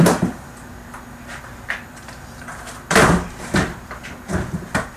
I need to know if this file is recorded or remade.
recorded